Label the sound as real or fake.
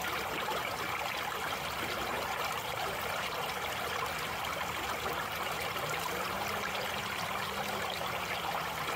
real